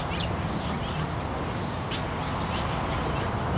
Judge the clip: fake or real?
real